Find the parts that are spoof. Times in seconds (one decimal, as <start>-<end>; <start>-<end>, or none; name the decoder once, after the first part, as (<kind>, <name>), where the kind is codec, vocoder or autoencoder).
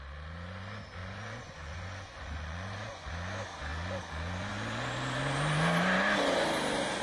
1.0-3.1 (vocoder, Vocos)